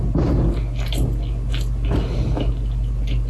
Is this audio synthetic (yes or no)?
no